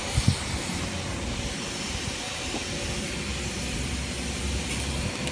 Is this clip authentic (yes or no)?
yes